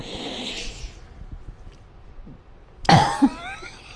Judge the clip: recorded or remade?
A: recorded